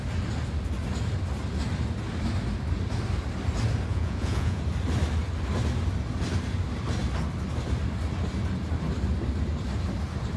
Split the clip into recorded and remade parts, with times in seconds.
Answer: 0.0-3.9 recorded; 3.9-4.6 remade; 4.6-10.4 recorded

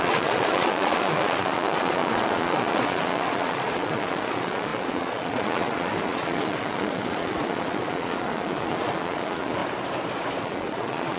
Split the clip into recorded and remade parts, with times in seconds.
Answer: 0.0-9.6 remade; 9.6-10.4 recorded; 10.4-11.2 remade